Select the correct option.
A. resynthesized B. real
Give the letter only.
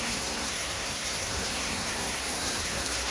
A